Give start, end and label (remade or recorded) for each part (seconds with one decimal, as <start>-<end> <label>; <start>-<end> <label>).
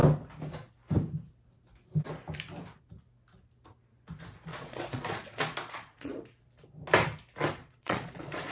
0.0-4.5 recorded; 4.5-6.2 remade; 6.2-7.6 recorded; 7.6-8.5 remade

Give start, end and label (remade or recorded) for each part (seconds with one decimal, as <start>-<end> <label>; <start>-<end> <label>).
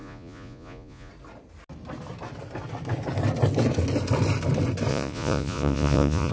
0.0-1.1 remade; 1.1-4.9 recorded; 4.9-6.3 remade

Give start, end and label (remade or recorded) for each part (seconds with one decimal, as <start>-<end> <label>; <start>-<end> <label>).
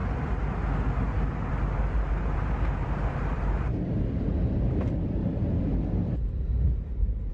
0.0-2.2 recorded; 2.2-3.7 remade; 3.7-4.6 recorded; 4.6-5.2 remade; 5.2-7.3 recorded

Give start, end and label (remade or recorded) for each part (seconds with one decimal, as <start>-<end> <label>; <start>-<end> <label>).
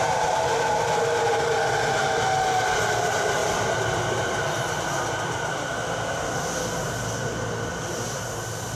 0.0-8.7 recorded